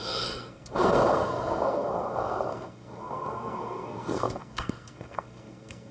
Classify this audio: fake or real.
fake